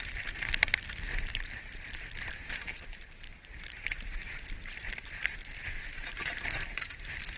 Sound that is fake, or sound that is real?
fake